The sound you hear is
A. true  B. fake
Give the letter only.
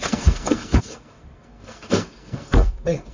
B